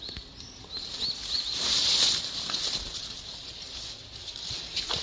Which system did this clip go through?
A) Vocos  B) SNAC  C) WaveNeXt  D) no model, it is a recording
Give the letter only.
D